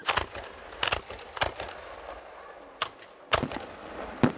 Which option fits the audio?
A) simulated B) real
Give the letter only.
B